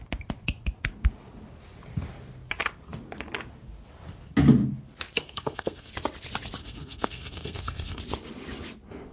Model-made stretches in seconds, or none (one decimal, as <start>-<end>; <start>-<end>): 5.2-5.9; 6.6-8.0